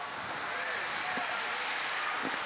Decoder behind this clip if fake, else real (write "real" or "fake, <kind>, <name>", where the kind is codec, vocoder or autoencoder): real